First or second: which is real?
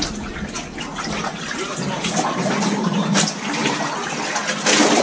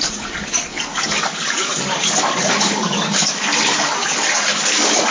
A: first